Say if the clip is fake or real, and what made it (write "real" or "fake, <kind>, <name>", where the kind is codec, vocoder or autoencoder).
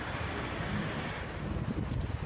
fake, vocoder, BigVGAN v2